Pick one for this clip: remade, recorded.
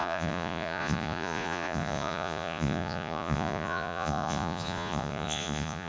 remade